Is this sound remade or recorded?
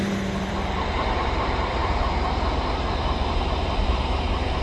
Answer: remade